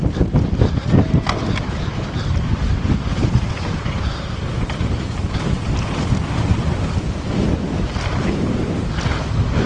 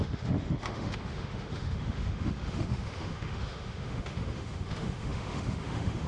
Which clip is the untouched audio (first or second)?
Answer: first